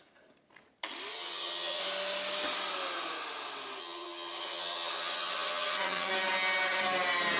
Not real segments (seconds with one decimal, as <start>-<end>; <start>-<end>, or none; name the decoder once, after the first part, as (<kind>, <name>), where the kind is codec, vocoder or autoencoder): 1.1-1.8 (vocoder, HiFi-GAN); 3.8-6.1